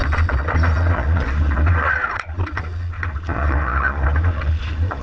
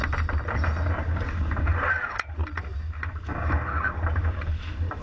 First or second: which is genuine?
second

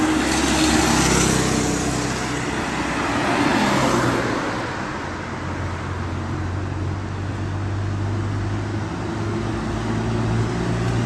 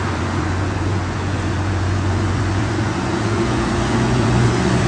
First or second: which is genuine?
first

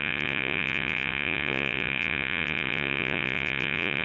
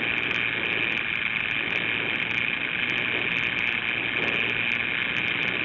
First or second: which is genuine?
second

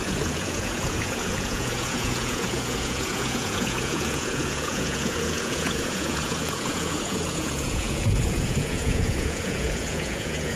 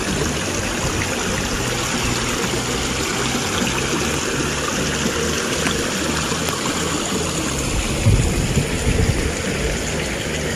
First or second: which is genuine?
second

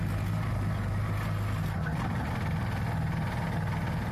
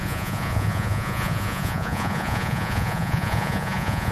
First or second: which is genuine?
first